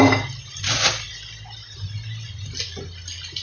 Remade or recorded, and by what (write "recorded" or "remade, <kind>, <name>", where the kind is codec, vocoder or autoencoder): recorded